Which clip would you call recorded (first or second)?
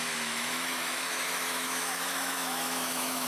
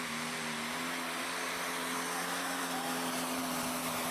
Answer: second